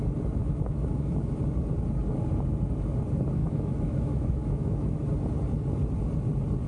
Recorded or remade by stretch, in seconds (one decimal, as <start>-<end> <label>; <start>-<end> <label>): 0.0-0.4 recorded; 0.4-1.4 remade; 1.4-3.4 recorded; 3.4-5.0 remade; 5.0-6.7 recorded

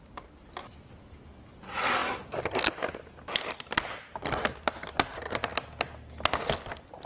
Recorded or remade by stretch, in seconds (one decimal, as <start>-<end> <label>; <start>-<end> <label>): 0.0-7.1 recorded

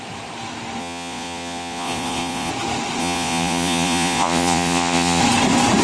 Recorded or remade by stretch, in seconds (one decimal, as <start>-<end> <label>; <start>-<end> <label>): 0.0-0.8 recorded; 0.8-2.5 remade; 2.5-3.0 recorded; 3.0-5.2 remade; 5.2-5.8 recorded

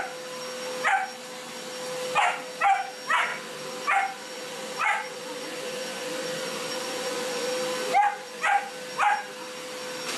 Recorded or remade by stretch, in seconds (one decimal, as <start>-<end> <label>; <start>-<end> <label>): 0.0-3.3 recorded; 3.3-7.5 remade; 7.5-8.0 recorded; 8.0-8.7 remade; 8.7-10.2 recorded

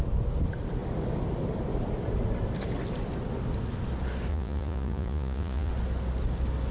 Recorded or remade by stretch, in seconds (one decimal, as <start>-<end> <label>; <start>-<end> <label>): 0.0-4.3 recorded; 4.3-5.7 remade; 5.7-6.7 recorded

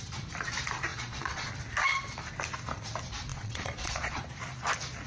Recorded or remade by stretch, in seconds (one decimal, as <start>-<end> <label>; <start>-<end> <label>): 0.0-0.9 recorded; 0.9-1.5 remade; 1.5-3.3 recorded; 3.3-4.2 remade; 4.2-5.1 recorded

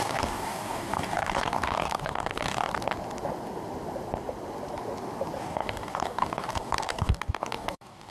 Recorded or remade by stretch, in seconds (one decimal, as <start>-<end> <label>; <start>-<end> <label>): 0.0-2.7 remade; 2.7-5.4 recorded; 5.4-8.1 remade